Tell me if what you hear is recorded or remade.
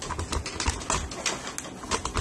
recorded